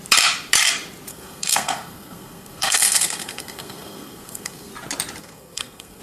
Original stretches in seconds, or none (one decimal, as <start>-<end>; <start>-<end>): 0.0-1.1; 4.7-5.2